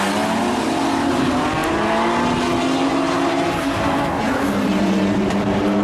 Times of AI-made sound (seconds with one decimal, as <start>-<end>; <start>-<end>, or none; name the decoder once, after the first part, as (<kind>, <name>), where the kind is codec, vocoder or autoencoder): 3.6-4.2 (codec, DAC)

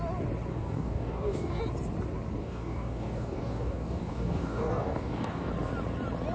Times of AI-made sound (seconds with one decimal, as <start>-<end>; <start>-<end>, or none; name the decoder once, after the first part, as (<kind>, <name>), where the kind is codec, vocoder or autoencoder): 0.5-1.6 (codec, DAC); 2.4-5.5